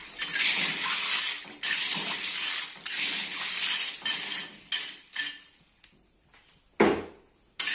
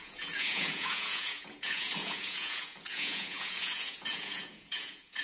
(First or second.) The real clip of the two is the first